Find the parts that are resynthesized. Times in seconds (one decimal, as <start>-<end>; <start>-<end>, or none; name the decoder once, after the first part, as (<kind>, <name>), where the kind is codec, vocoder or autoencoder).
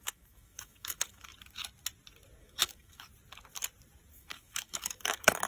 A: 0.0-1.3 (autoencoder, DAC-VAE); 2.4-3.1; 4.1-5.5